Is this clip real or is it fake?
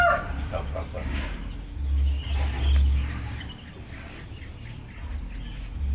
real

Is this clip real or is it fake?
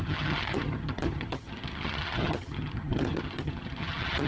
fake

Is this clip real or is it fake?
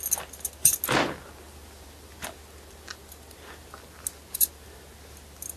real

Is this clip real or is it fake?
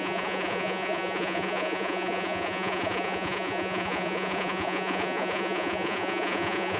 fake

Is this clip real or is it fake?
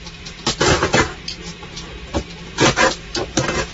real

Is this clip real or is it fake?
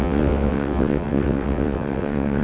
fake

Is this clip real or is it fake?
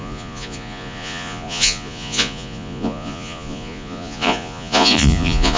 fake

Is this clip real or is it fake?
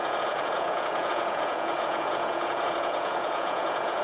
fake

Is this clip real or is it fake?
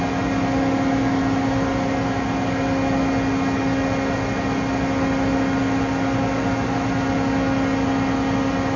real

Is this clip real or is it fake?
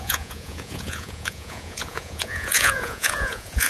fake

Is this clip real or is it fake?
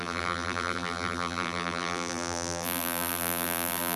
fake